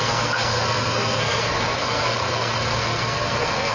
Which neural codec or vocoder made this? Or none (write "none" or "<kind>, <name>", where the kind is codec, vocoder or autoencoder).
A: codec, SNAC